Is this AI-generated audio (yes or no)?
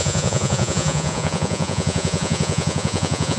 yes